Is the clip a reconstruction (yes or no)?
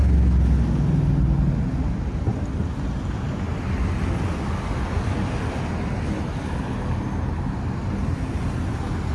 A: no